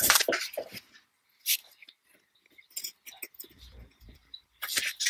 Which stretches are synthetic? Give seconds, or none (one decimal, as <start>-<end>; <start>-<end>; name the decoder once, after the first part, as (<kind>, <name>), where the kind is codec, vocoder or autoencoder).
0.0-1.6 (vocoder, BigVGAN v2); 3.9-5.1